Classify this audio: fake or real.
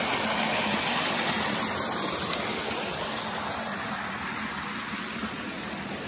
real